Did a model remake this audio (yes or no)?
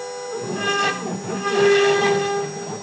no